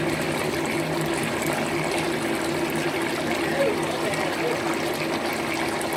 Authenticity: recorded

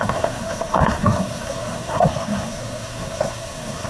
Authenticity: remade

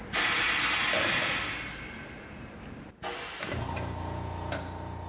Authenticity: recorded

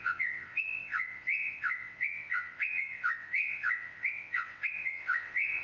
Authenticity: remade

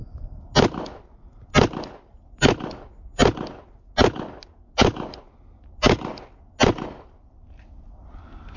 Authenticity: recorded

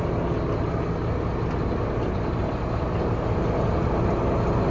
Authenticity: recorded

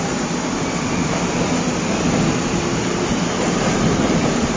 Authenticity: recorded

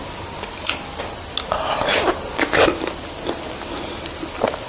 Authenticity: recorded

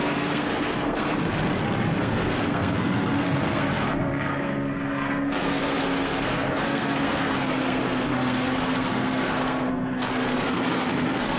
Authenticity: remade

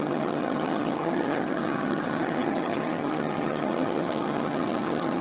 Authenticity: remade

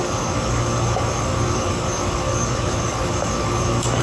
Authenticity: remade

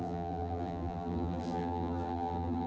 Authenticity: remade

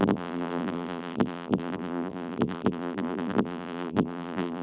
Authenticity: remade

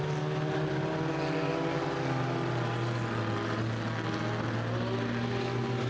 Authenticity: recorded